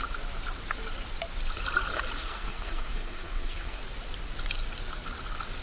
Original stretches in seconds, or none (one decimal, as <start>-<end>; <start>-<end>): 0.0-2.2; 3.8-5.6

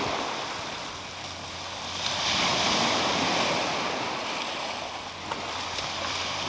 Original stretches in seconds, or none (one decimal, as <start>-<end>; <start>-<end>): 0.0-6.5

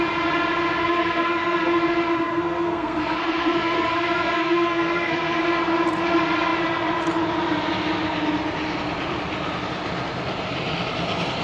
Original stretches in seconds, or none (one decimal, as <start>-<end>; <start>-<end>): 0.0-0.8; 1.7-2.1; 5.4-11.4

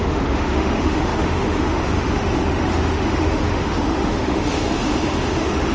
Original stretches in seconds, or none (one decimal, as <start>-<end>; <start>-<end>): none

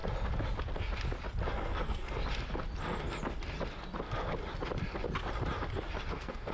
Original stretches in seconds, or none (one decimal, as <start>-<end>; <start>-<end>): 0.0-1.5; 2.2-6.1

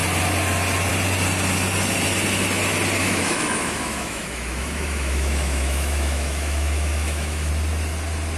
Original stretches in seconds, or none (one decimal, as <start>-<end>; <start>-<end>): 0.0-3.0; 7.5-8.4

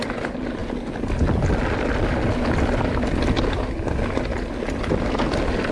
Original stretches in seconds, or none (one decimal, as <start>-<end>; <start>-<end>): 0.0-5.7